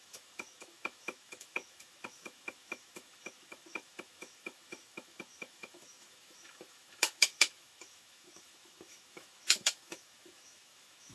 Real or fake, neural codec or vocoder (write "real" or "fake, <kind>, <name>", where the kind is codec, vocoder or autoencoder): fake, autoencoder, DAC-VAE